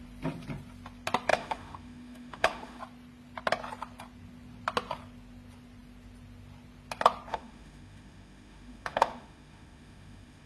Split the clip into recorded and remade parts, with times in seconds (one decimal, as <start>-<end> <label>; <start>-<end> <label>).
0.0-1.3 recorded; 1.3-2.8 remade; 2.8-7.3 recorded; 7.3-10.5 remade